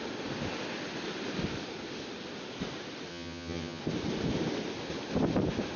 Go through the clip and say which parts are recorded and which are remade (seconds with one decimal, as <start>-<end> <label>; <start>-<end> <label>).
0.0-3.1 recorded; 3.1-3.8 remade; 3.8-5.8 recorded